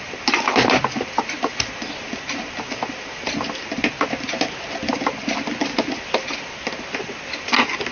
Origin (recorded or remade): recorded